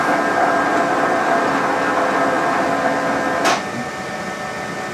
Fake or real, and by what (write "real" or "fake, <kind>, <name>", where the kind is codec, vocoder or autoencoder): real